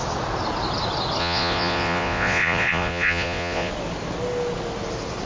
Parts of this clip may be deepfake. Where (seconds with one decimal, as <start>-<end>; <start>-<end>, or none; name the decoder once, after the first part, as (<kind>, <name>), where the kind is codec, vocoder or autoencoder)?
1.2-3.7 (vocoder, Vocos)